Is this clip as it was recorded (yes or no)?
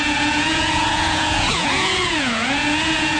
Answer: no